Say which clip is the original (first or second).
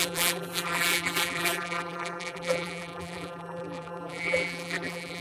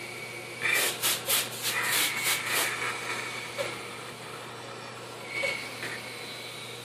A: second